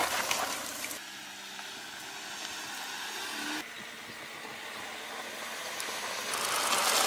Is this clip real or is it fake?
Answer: real